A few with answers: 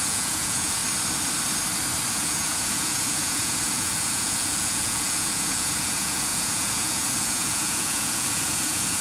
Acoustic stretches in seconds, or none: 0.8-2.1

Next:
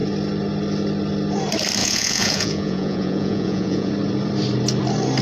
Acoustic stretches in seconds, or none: 0.0-1.8; 3.9-5.2

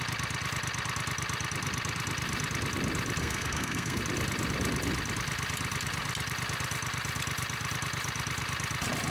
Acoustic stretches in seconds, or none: 0.0-3.2; 4.0-9.1